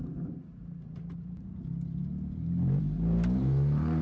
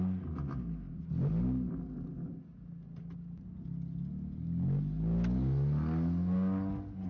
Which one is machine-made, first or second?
first